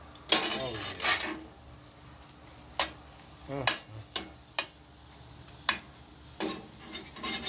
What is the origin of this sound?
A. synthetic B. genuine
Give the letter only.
B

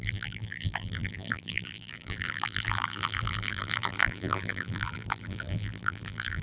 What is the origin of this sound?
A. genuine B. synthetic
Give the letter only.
B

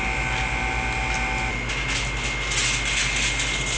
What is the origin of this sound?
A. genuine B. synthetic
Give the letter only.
A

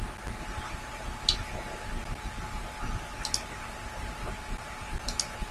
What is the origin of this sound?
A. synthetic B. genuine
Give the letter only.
B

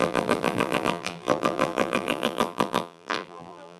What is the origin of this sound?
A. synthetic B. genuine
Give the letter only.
A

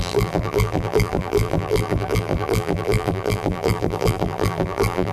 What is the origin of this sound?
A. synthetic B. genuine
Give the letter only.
A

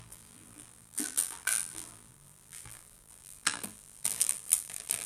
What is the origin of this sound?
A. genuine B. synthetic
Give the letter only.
B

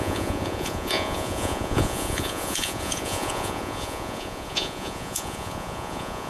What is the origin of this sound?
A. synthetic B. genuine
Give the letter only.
A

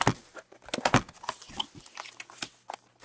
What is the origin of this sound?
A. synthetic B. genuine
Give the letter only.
B